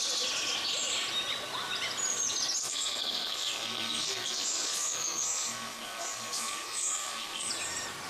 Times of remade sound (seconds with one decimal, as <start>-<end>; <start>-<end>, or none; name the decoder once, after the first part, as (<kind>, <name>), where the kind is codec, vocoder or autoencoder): 2.6-7.5 (codec, SNAC)